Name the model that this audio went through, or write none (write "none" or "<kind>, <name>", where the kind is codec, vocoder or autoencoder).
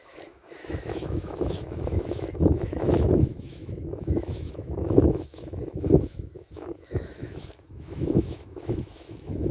autoencoder, DAC-VAE